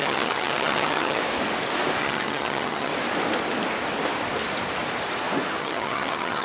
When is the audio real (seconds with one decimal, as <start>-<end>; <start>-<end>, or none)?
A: 1.2-2.0; 2.9-5.6